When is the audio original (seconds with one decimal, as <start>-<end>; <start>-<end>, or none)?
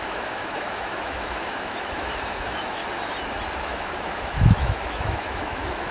2.8-3.6